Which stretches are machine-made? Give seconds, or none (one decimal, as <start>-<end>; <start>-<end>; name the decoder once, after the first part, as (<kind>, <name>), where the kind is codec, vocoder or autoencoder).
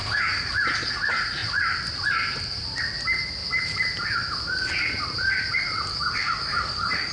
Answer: 0.0-0.5 (codec, DAC); 5.9-7.1